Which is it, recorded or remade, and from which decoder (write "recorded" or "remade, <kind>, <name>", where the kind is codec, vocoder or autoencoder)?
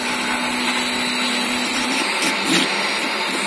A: recorded